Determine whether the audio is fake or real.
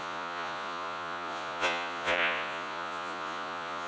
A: fake